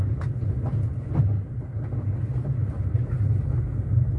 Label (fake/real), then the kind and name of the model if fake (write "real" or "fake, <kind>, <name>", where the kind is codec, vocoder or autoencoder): real